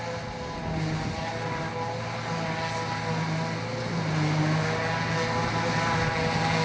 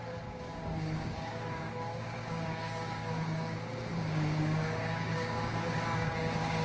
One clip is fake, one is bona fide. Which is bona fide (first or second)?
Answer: first